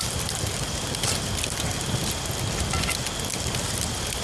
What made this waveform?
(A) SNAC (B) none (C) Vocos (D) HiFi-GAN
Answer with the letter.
B